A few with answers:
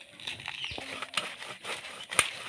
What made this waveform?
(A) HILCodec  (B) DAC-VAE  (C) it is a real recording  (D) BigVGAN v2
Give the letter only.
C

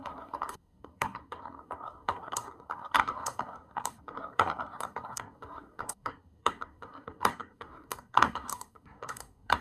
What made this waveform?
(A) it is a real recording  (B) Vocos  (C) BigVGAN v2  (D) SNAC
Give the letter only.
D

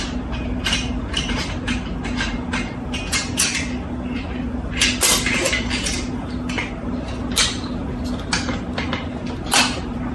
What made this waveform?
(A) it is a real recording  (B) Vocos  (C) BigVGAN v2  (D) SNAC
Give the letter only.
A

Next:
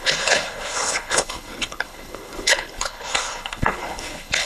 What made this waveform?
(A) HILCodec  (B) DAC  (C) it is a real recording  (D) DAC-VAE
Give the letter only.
A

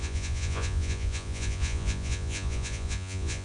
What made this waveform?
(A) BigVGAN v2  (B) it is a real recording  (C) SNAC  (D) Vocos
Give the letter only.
D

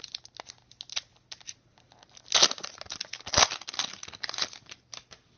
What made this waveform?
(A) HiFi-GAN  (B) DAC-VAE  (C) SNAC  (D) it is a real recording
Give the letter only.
D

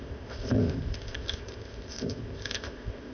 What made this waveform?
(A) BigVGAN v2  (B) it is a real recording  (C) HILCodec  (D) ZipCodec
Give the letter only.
D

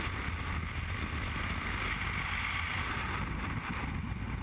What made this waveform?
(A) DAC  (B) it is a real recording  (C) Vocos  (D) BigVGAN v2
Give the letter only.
B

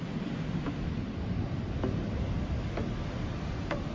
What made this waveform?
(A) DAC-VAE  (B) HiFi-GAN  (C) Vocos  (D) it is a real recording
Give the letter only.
D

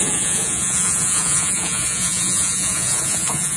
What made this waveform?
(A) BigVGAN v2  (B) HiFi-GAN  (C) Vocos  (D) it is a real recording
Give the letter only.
C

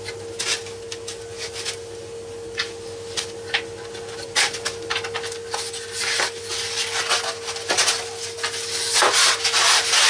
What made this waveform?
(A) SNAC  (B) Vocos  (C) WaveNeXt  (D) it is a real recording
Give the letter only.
D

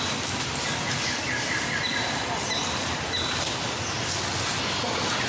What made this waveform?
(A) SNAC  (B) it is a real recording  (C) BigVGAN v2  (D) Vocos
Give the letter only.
B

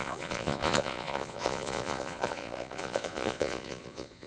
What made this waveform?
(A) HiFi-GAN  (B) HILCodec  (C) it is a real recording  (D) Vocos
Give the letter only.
D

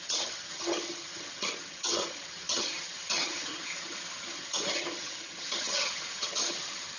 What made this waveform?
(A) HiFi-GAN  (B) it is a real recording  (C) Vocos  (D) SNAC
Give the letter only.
A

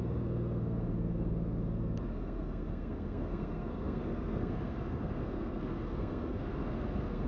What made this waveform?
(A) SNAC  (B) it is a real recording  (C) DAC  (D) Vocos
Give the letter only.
A